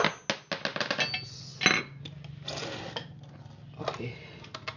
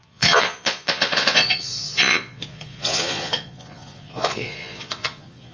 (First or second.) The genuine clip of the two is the first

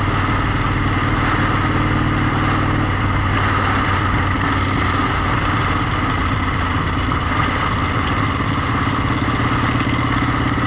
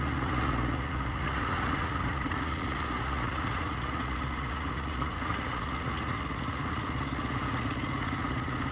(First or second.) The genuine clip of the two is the first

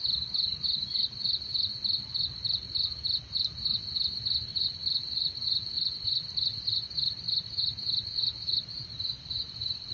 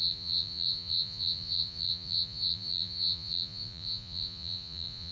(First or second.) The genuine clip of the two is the first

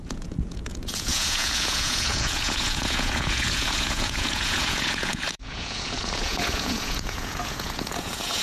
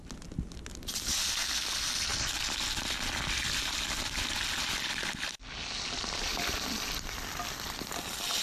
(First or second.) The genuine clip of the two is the second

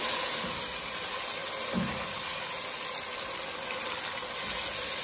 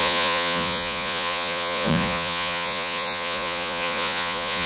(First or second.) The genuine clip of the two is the first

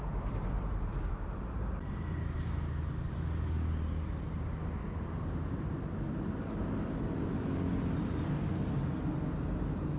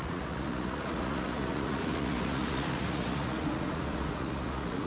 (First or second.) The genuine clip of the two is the first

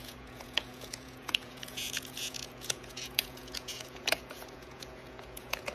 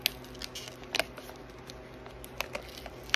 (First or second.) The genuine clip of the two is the second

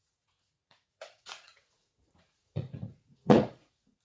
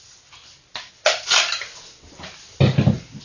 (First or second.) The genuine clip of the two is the second